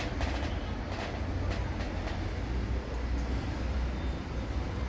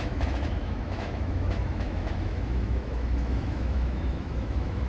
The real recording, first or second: first